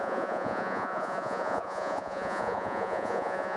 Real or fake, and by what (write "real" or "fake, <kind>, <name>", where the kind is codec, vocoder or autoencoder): fake, vocoder, Vocos